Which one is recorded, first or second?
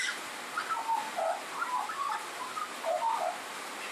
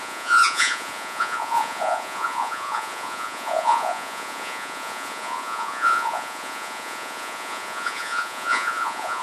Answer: first